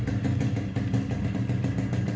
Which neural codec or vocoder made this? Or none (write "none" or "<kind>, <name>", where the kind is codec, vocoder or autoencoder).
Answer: none